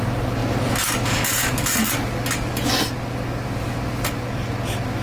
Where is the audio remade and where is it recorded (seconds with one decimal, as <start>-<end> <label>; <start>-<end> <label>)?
0.0-5.0 recorded